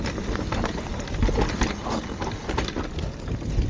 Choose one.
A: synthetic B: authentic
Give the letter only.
B